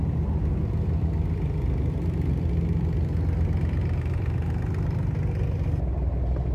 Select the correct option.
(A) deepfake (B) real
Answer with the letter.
B